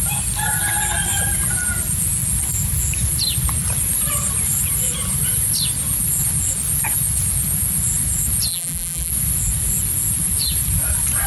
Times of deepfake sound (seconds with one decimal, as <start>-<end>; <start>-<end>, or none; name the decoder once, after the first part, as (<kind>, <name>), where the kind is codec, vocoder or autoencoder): 8.5-9.1 (vocoder, BigVGAN v2)